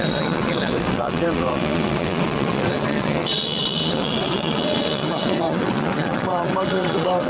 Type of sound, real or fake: fake